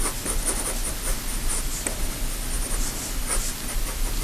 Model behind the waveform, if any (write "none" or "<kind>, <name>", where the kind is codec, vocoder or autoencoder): none